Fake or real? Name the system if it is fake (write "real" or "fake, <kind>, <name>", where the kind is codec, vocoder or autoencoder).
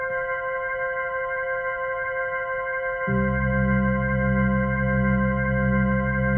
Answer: real